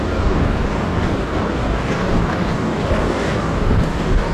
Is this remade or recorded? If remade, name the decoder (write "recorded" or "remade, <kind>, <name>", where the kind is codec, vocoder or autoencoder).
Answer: remade, codec, DAC